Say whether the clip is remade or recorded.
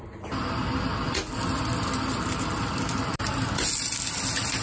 recorded